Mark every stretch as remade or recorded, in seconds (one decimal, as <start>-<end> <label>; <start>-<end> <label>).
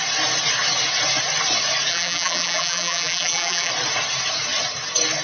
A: 0.0-1.9 recorded; 1.9-3.7 remade; 3.7-5.2 recorded